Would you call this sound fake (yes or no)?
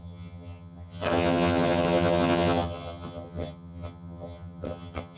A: yes